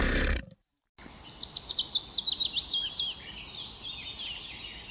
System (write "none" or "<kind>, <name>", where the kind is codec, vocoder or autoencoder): none